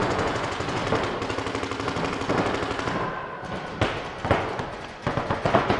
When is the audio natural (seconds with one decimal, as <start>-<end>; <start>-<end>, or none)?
0.8-4.3